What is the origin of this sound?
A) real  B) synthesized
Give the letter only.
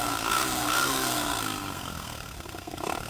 B